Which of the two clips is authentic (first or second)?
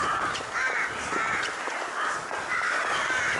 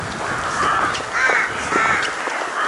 second